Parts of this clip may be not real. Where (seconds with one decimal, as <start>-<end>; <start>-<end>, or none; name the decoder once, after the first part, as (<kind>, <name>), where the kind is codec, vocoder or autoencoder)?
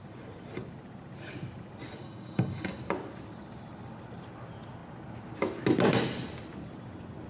2.0-2.8 (codec, DAC)